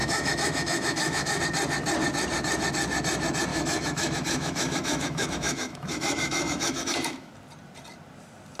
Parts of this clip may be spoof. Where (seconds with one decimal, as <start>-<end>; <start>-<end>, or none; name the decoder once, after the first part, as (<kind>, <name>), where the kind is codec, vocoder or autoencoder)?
0.0-1.4 (autoencoder, DAC-VAE); 3.5-7.3